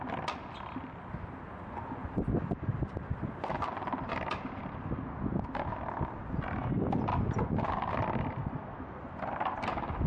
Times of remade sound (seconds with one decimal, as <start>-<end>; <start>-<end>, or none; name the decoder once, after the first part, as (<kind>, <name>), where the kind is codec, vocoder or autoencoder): 2.0-4.9 (vocoder, BigVGAN v2)